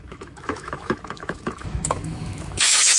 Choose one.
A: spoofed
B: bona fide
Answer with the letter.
A